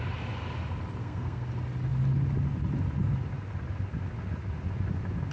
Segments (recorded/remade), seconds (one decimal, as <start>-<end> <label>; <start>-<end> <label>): 0.0-1.0 recorded; 1.0-1.5 remade; 1.5-5.3 recorded